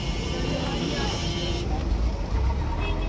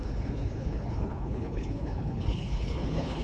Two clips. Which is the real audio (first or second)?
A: first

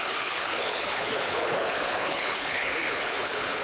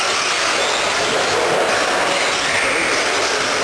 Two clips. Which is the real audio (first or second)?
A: second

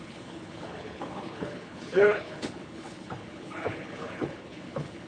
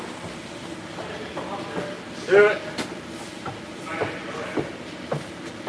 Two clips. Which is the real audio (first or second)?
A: second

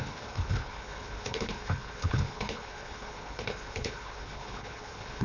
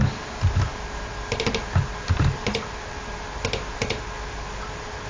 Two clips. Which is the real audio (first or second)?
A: second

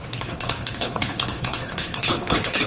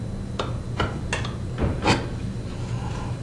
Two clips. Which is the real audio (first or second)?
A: second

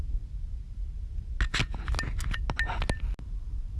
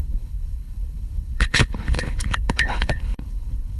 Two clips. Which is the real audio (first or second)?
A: first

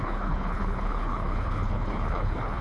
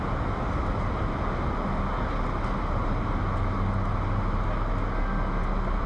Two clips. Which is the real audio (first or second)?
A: second